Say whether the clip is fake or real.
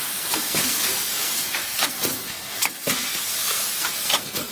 fake